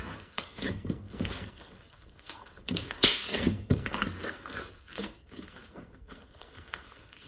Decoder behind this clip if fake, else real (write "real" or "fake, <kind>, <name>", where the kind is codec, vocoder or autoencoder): fake, codec, SNAC